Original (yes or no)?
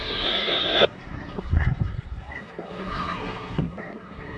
no